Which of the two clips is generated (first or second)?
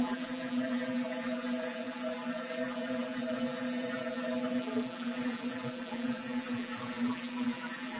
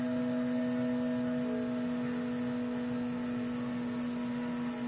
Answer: first